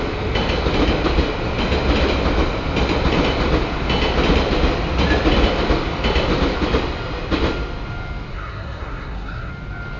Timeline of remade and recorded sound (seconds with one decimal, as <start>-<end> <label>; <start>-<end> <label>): 0.0-8.3 recorded; 8.3-9.5 remade; 9.5-10.0 recorded